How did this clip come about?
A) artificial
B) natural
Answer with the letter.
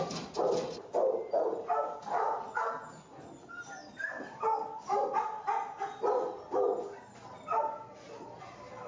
B